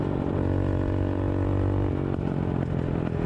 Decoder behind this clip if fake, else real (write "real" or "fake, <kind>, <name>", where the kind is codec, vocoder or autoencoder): real